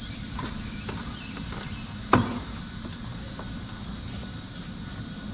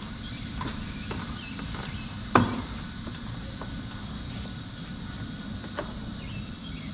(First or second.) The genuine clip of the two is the first